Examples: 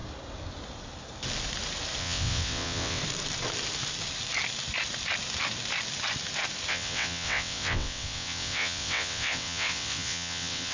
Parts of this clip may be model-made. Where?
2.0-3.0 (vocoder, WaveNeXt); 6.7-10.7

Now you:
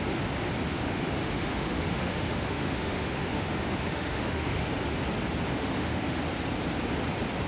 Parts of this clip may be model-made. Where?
0.7-4.7 (autoencoder, DAC-VAE); 5.6-6.2

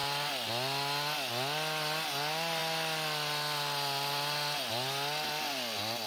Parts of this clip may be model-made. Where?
none